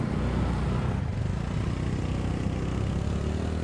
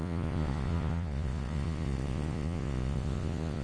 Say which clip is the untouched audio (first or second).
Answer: first